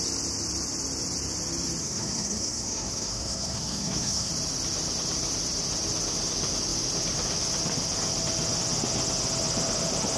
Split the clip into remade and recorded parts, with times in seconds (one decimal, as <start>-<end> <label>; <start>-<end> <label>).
0.0-1.8 recorded; 1.8-4.3 remade; 4.3-10.2 recorded